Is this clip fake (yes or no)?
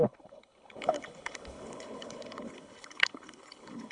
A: yes